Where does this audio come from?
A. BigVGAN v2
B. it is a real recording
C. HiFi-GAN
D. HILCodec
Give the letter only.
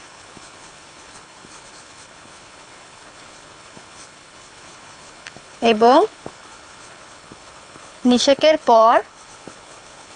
D